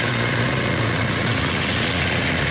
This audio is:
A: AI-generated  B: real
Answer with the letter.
A